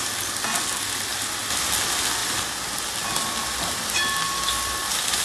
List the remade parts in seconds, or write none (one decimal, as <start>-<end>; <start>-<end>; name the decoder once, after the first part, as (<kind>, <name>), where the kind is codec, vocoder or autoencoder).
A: 1.1-1.7 (vocoder, BigVGAN v2); 2.2-4.8